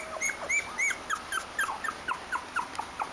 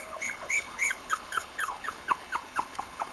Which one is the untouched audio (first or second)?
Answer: first